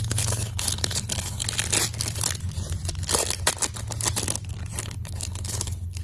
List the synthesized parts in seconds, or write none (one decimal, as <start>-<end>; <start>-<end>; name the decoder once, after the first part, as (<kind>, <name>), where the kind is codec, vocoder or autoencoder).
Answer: 0.0-1.4 (codec, HILCodec); 4.8-6.0